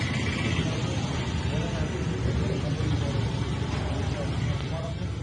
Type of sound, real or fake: real